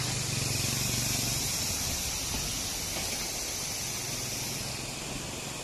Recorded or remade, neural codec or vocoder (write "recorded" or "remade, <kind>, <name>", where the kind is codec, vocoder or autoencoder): recorded